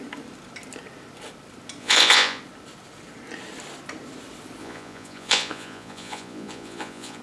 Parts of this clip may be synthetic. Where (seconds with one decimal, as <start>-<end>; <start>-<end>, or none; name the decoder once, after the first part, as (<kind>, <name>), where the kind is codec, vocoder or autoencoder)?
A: 1.8-2.4 (vocoder, Vocos); 4.6-7.2